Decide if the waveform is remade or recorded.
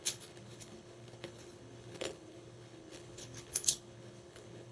remade